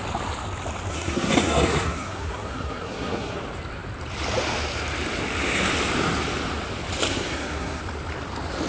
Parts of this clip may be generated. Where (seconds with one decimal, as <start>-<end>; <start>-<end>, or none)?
0.9-3.4; 7.1-7.8